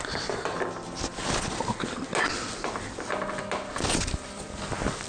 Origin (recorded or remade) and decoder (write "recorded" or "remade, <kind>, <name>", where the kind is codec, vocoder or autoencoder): recorded